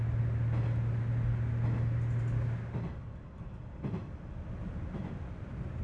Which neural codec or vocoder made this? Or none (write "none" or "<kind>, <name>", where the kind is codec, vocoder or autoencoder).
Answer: none